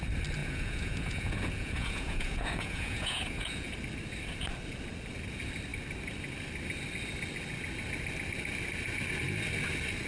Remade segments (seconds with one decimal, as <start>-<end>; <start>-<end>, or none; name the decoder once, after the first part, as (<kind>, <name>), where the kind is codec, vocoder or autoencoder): 0.4-3.7 (vocoder, Vocos)